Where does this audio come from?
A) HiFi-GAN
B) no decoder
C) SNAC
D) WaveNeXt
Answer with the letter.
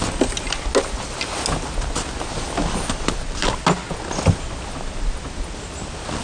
B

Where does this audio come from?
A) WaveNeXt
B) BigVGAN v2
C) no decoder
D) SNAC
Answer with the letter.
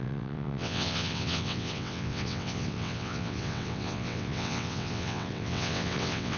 A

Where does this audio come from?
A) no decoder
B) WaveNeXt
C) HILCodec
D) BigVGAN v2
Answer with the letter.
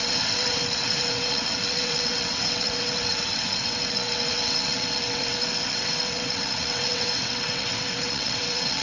B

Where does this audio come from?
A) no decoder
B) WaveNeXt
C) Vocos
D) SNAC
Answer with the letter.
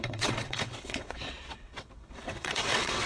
B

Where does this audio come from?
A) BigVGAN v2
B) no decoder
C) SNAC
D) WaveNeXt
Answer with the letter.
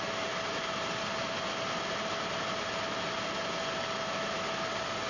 B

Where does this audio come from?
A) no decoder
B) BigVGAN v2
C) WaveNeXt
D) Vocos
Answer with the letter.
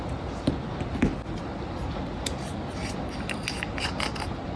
A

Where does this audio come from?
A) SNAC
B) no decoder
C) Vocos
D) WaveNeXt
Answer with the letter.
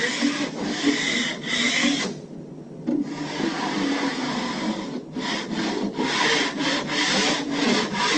B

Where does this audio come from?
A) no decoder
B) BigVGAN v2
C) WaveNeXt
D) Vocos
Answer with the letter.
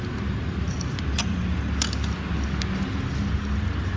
A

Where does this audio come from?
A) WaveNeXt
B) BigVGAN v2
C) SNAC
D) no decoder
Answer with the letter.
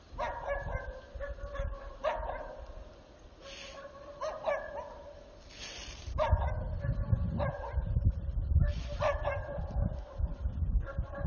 D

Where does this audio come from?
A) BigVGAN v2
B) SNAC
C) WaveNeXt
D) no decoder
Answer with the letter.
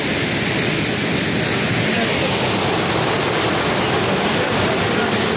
D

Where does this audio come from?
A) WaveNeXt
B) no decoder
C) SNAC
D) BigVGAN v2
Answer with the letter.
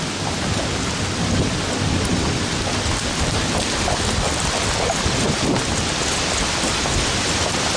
B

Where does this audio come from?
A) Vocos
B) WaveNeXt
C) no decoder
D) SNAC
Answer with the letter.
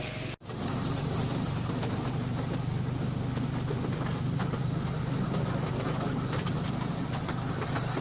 C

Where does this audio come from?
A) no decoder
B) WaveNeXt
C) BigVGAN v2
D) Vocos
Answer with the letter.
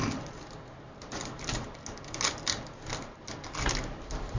A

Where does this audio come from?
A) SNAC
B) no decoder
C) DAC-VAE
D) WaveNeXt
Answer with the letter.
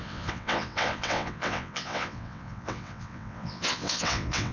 D